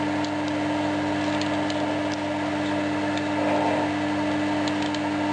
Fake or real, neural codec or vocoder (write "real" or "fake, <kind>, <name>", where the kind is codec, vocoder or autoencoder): real